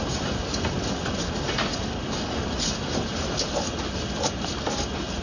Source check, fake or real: real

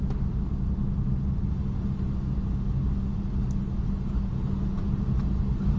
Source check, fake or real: real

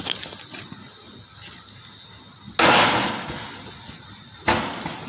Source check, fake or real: real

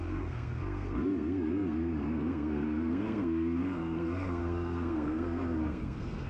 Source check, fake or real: fake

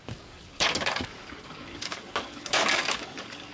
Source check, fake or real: fake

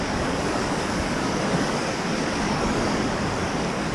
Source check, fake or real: fake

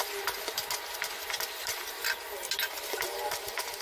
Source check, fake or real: real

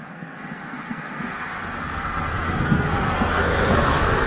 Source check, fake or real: fake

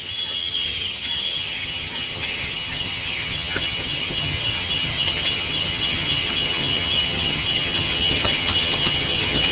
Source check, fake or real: fake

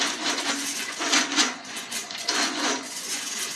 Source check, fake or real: fake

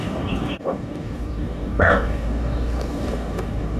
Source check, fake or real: fake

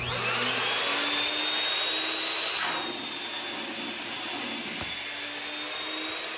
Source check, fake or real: real